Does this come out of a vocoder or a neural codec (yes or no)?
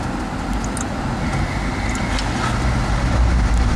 no